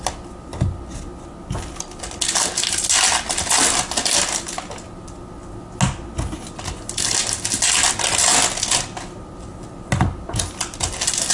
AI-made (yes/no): no